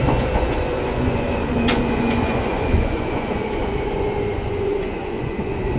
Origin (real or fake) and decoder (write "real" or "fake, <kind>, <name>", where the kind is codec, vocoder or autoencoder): fake, vocoder, Vocos